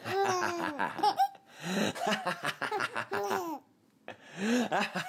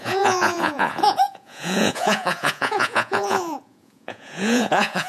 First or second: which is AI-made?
second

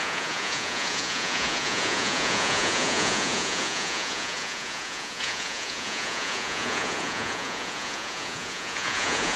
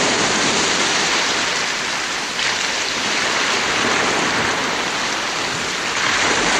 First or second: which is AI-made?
first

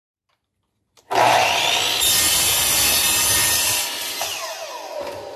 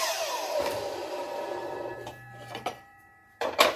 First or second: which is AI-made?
second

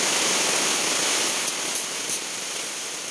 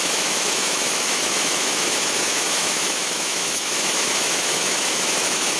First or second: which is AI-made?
second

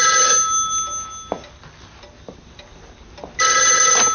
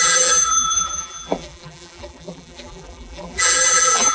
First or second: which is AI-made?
second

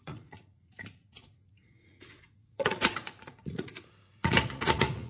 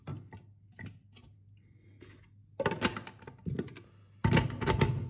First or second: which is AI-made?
first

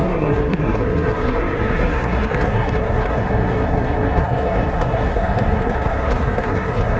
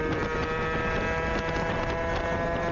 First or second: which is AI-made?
first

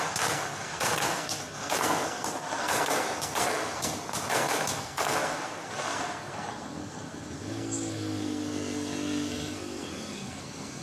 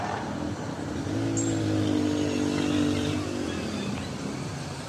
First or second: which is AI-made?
first